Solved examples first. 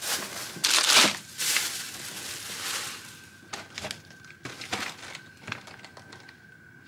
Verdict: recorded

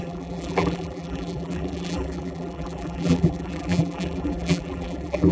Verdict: remade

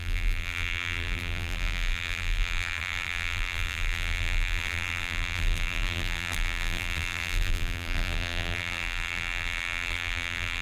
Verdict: remade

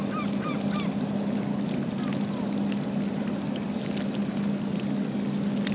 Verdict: recorded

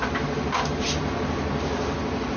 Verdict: recorded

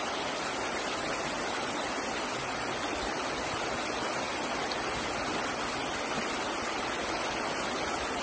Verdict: recorded